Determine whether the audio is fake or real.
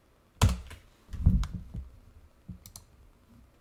real